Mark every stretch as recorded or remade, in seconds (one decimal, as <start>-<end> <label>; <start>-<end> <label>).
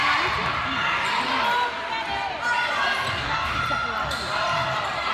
0.0-3.1 recorded; 3.1-3.6 remade; 3.6-5.1 recorded